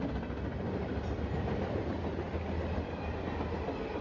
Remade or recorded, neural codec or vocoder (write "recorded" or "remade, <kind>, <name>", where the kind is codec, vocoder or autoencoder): recorded